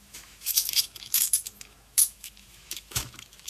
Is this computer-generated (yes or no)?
yes